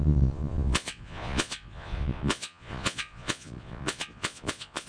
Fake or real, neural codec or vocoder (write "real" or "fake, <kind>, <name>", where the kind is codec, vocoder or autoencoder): fake, vocoder, Vocos